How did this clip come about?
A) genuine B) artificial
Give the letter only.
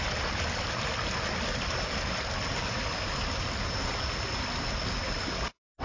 A